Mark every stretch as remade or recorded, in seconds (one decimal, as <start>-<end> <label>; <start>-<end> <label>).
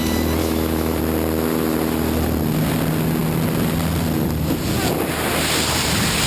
0.0-0.4 recorded; 0.4-1.0 remade; 1.0-6.3 recorded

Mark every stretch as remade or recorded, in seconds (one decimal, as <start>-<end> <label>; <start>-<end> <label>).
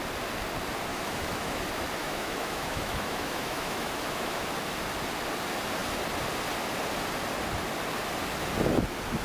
0.0-0.9 recorded; 0.9-1.6 remade; 1.6-2.0 recorded; 2.0-4.5 remade; 4.5-9.2 recorded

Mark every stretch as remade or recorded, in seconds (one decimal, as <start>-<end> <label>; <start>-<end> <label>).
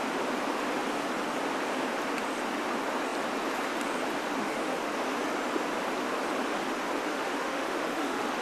0.0-4.4 recorded; 4.4-4.9 remade; 4.9-7.1 recorded; 7.1-8.4 remade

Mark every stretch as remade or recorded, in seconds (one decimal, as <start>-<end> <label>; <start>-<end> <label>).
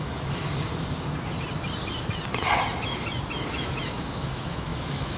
0.0-0.4 remade; 0.4-3.5 recorded; 3.5-5.2 remade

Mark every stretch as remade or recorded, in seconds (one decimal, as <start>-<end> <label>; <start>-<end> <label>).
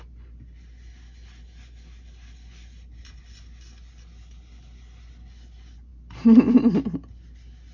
0.0-7.7 recorded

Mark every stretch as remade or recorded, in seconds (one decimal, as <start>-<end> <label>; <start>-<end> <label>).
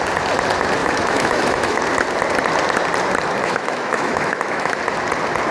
0.0-0.8 recorded; 0.8-1.8 remade; 1.8-3.4 recorded; 3.4-4.8 remade; 4.8-5.5 recorded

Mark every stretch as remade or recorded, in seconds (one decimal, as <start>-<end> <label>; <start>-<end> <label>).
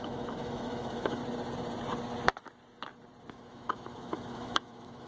0.0-1.2 remade; 1.2-3.3 recorded; 3.3-5.1 remade